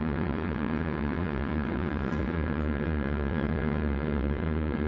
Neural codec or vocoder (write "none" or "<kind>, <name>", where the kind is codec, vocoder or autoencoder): vocoder, WaveNeXt